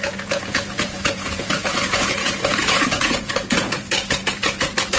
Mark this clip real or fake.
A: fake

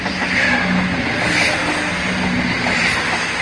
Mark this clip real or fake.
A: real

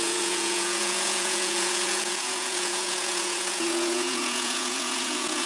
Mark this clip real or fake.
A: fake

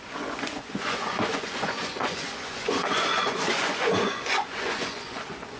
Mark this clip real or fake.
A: fake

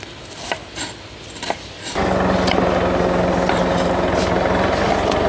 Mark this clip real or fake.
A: real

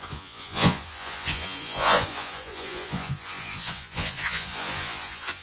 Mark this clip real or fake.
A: fake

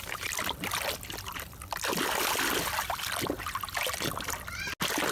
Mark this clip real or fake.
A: real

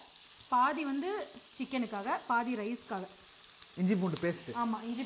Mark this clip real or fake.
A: real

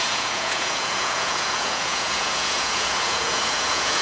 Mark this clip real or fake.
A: fake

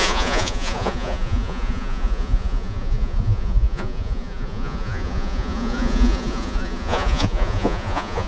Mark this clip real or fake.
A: fake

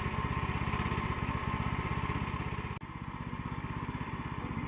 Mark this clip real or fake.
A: real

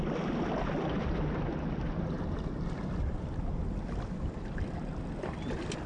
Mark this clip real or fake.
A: real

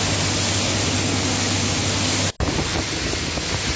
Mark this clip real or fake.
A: real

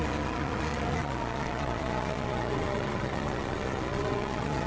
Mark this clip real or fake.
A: fake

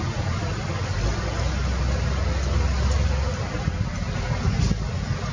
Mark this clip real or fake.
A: real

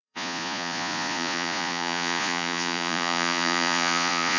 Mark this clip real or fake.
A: fake